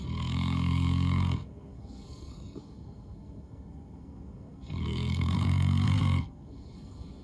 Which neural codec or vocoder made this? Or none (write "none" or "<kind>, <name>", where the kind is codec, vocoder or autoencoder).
codec, SNAC